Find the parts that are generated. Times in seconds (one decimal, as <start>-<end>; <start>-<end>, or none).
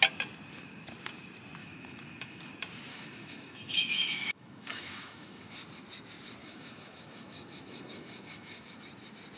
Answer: 1.6-2.5; 2.9-5.5; 6.4-8.8